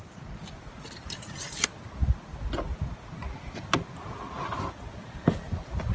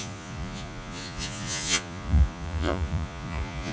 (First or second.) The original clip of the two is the first